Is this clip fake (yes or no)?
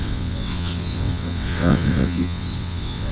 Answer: yes